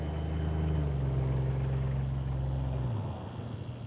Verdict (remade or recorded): recorded